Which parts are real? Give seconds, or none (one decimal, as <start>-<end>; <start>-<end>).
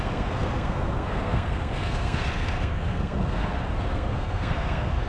none